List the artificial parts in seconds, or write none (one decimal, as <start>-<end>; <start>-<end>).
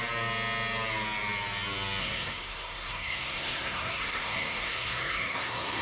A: 2.0-5.8